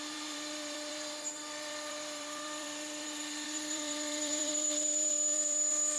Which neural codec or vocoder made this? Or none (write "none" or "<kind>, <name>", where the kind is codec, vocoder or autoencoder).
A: vocoder, BigVGAN v2